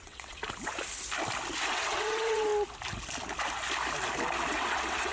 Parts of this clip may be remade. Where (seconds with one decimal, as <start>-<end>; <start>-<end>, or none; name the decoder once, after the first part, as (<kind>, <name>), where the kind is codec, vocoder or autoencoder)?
0.0-0.4 (vocoder, WaveNeXt); 1.7-2.5; 4.5-5.1